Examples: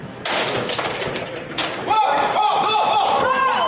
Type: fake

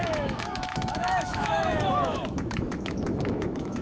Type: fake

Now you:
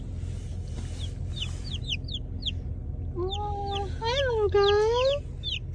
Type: real